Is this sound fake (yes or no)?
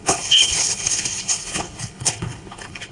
yes